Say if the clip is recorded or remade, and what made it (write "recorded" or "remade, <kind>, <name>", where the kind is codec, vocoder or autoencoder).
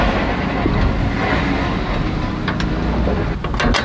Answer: recorded